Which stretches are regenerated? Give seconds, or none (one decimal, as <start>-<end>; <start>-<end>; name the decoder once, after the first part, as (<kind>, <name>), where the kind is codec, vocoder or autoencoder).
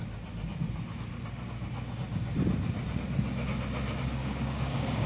4.2-5.1 (codec, DAC)